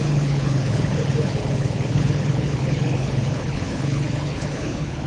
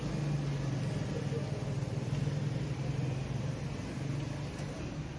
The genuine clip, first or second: second